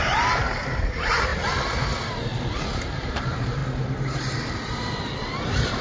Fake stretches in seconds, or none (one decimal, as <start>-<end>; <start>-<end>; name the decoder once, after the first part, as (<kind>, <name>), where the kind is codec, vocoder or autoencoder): 0.0-1.3 (vocoder, BigVGAN v2); 2.8-3.6; 4.5-5.8

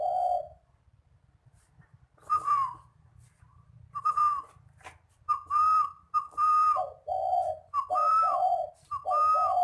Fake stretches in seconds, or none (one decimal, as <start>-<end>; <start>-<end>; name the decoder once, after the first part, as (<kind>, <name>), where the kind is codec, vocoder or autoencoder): 2.3-6.9 (vocoder, BigVGAN v2); 8.0-8.7